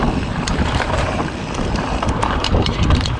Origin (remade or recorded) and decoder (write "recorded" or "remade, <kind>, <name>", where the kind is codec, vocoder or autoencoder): remade, vocoder, BigVGAN v2